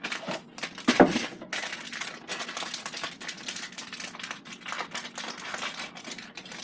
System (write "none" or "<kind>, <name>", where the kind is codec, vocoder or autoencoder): none